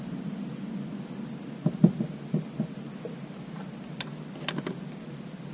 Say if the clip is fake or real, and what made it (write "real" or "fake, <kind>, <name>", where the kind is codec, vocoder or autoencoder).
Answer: real